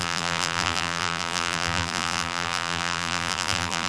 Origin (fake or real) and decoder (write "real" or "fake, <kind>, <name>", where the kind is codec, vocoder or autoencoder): fake, vocoder, BigVGAN v2